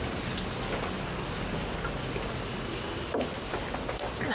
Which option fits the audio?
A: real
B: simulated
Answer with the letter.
A